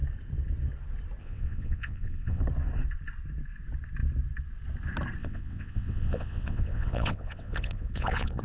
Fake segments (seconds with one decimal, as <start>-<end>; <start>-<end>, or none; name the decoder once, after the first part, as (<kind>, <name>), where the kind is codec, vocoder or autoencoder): 1.2-2.4 (vocoder, WaveNeXt); 5.2-8.4